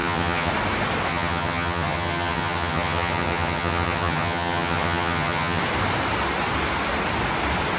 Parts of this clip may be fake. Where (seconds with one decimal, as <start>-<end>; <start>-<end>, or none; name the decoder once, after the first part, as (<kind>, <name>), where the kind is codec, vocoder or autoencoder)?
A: 0.0-0.5 (vocoder, HiFi-GAN); 1.1-5.6